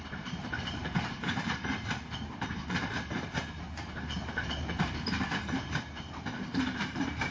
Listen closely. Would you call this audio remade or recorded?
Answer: remade